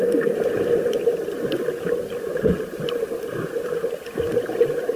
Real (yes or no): yes